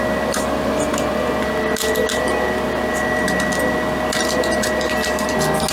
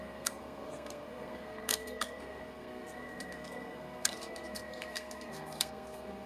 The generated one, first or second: second